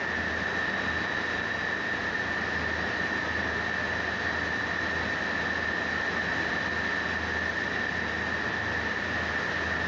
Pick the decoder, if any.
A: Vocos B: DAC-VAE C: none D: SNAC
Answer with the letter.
C